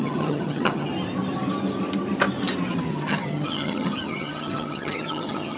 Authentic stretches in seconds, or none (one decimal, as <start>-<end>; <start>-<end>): 0.9-2.9